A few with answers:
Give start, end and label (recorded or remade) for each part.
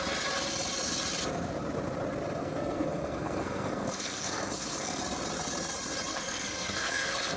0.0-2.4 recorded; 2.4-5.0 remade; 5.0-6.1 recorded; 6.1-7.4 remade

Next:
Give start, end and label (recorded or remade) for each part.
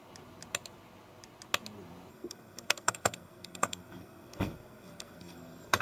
0.0-2.1 recorded; 2.1-5.8 remade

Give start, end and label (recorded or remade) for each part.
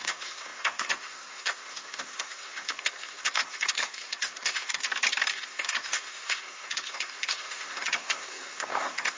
0.0-4.8 remade; 4.8-5.3 recorded; 5.3-9.2 remade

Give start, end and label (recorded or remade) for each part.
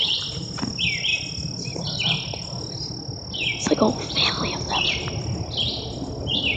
0.0-6.6 recorded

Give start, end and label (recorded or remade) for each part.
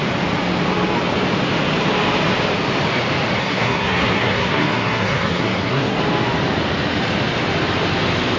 0.0-3.4 recorded; 3.4-6.0 remade; 6.0-8.4 recorded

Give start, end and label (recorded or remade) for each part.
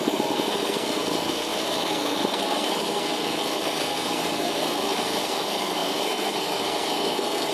0.0-7.5 remade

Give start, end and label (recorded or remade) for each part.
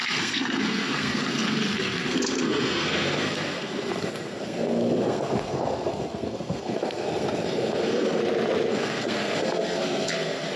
0.0-8.2 remade; 8.2-8.7 recorded; 8.7-10.6 remade